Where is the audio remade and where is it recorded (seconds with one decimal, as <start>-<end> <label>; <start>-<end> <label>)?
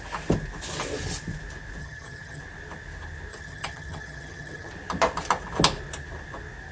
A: 0.0-1.8 recorded; 1.8-2.4 remade; 2.4-3.3 recorded; 3.3-4.7 remade; 4.7-6.7 recorded